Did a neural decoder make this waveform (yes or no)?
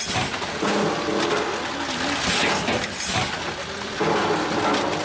no